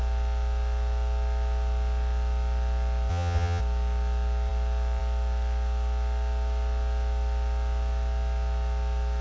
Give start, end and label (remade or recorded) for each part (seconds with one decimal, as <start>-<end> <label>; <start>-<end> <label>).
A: 0.0-3.1 recorded; 3.1-3.6 remade; 3.6-9.2 recorded